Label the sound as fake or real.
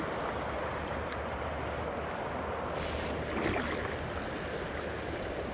real